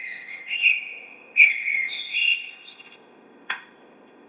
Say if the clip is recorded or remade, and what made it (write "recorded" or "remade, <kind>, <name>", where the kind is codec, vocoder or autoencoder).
remade, codec, ZipCodec